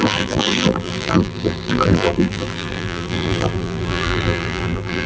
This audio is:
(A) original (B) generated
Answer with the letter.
B